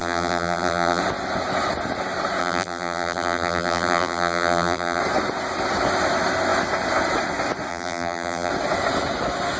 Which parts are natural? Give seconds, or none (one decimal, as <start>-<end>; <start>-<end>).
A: 1.0-2.4; 5.0-7.7; 8.5-9.6